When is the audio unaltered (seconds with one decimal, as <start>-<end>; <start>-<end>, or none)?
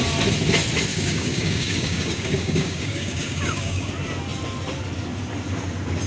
0.0-0.9; 3.9-6.1